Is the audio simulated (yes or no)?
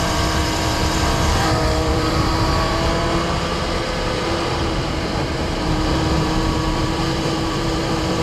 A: yes